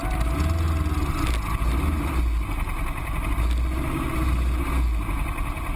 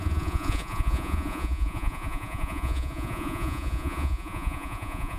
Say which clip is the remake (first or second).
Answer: second